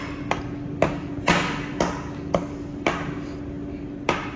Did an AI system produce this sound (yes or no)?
no